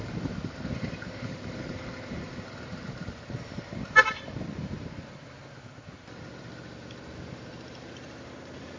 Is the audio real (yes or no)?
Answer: no